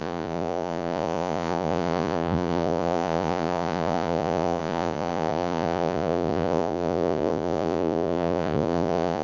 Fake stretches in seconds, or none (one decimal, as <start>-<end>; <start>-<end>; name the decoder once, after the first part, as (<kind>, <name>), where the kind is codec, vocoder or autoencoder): 0.0-9.2 (vocoder, Vocos)